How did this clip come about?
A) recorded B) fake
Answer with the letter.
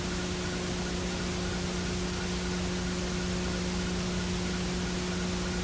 A